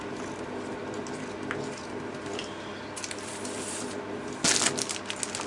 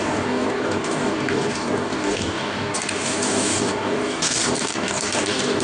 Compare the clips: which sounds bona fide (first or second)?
first